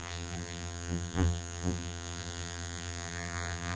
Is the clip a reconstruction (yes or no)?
yes